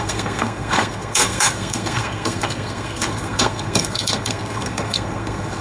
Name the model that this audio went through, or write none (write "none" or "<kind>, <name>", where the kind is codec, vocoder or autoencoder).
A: codec, SNAC